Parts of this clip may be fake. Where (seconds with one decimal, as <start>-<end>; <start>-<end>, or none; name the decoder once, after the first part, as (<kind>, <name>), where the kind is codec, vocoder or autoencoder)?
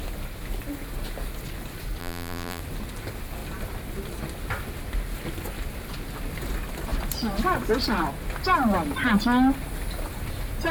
2.0-2.6 (vocoder, BigVGAN v2)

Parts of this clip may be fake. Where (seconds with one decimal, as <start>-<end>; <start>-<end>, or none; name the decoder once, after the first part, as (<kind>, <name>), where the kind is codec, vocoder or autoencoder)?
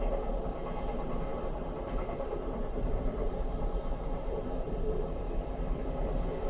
1.3-5.2 (vocoder, BigVGAN v2)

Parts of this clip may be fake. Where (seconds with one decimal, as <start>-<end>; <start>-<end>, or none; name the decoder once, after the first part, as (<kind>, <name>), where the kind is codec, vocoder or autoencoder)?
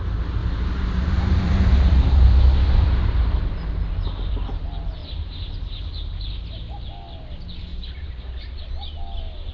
0.4-4.3 (vocoder, BigVGAN v2); 5.0-6.2; 7.7-8.7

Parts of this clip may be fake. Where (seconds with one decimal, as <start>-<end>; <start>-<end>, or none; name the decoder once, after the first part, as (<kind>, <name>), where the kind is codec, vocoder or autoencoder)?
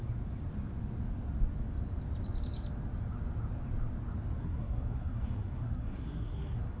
4.4-6.8 (codec, SNAC)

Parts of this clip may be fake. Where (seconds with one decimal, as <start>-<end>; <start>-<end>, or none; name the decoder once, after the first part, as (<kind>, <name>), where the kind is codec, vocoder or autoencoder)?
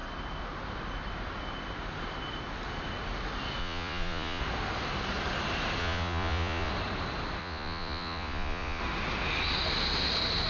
3.6-4.4 (vocoder, Vocos); 5.8-6.7; 7.4-8.8